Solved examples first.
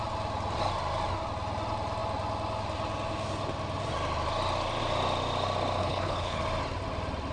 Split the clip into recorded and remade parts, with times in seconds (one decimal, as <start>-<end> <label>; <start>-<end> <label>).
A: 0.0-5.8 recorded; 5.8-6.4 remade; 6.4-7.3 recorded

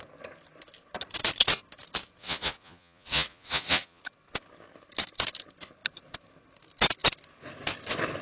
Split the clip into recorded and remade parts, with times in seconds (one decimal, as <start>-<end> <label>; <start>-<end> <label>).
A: 0.0-2.2 recorded; 2.2-4.0 remade; 4.0-8.2 recorded

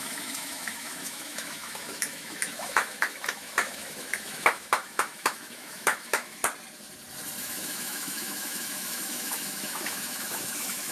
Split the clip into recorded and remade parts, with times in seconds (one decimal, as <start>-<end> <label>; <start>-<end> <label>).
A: 0.0-6.4 remade; 6.4-7.4 recorded; 7.4-10.9 remade

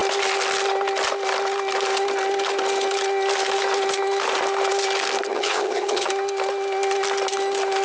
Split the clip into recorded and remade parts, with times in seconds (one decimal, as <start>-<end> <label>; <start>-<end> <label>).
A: 0.0-5.3 recorded; 5.3-6.1 remade; 6.1-7.8 recorded

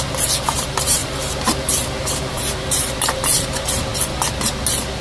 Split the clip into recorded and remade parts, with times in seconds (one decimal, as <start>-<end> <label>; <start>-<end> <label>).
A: 0.0-3.9 remade; 3.9-5.0 recorded

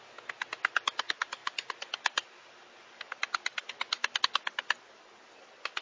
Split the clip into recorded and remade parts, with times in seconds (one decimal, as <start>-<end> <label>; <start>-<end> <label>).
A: 0.0-5.8 recorded

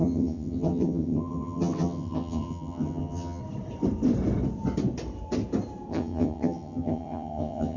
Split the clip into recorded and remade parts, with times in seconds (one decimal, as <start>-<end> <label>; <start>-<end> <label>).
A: 0.0-3.4 remade; 3.4-5.9 recorded; 5.9-7.8 remade

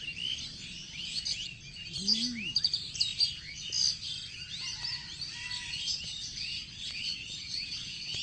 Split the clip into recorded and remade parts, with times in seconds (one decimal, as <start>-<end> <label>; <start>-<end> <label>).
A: 0.0-6.2 recorded; 6.2-8.2 remade